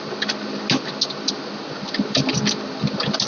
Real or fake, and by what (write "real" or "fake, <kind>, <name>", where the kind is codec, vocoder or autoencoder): real